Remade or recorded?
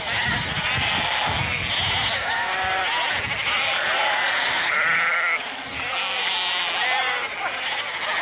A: recorded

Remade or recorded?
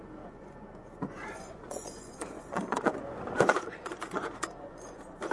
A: remade